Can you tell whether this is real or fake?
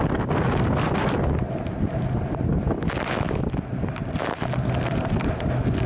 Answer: real